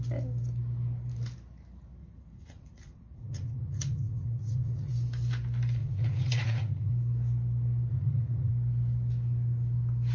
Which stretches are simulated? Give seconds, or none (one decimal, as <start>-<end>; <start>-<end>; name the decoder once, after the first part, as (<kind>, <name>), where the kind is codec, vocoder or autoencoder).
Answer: 2.0-4.9 (vocoder, Vocos); 5.8-6.9; 7.9-8.5